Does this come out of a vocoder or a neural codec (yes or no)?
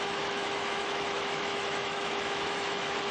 yes